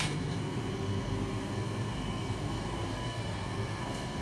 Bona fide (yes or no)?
no